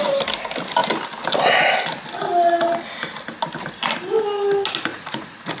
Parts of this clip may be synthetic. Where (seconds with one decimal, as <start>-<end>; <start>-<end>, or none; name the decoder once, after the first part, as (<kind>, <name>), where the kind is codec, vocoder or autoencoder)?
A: 4.9-5.6 (vocoder, Vocos)